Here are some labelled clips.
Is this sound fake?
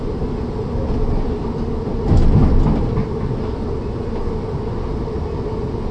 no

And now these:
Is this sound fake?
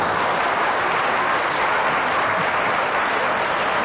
no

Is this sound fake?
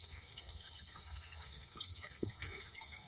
yes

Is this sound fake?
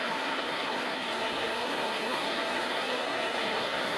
yes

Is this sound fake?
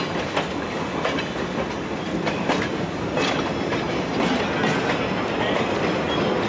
no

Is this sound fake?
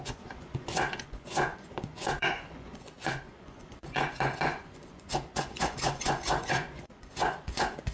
yes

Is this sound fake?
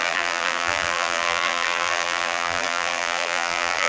yes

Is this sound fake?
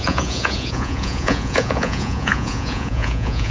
yes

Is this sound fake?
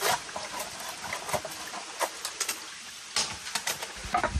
no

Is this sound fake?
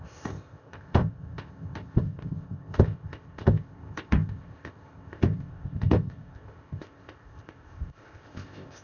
yes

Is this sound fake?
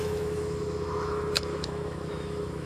yes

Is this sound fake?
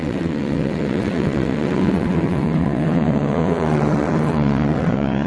yes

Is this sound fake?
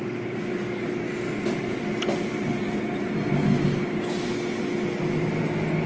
no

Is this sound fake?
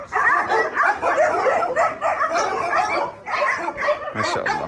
no